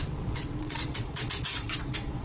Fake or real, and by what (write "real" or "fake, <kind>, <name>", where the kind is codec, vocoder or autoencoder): fake, vocoder, WaveNeXt